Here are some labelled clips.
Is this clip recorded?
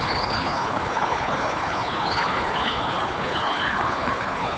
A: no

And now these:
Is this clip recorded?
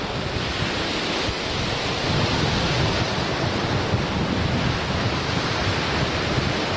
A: yes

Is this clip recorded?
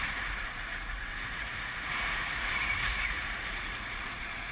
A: no